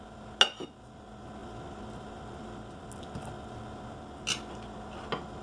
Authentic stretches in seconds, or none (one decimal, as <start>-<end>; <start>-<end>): 0.0-5.4